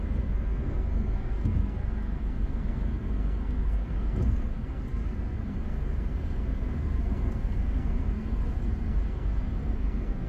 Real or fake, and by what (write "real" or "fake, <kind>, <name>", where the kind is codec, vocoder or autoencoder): fake, codec, SNAC